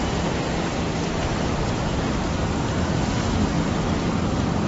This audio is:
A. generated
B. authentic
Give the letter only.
A